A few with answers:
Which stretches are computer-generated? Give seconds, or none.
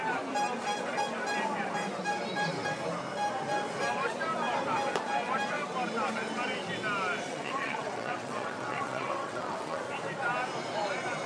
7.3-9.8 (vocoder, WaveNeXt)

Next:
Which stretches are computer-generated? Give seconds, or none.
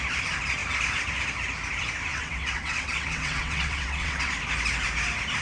2.1-4.3 (vocoder, WaveNeXt)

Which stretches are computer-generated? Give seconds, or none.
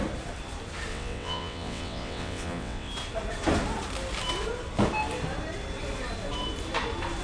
0.9-2.9 (vocoder, WaveNeXt)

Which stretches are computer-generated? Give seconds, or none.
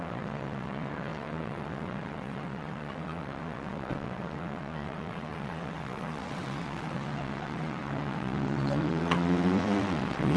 0.0-10.4 (vocoder, WaveNeXt)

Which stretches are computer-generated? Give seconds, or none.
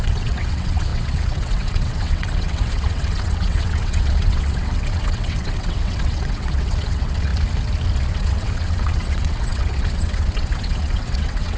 0.0-7.3 (vocoder, WaveNeXt); 8.1-11.6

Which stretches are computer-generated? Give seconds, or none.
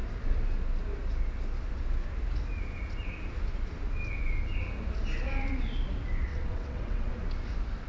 6.3-7.1 (vocoder, WaveNeXt)